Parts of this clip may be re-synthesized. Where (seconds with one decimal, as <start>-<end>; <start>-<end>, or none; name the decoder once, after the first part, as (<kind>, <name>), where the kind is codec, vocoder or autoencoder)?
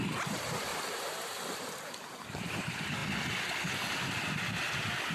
0.0-3.0 (vocoder, BigVGAN v2)